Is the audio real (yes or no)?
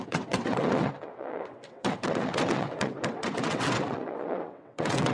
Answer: no